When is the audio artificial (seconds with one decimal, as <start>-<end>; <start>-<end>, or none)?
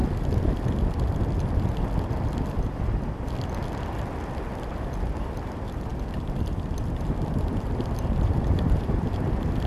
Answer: 5.2-5.9; 6.9-9.7